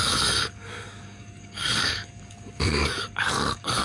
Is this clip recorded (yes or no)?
no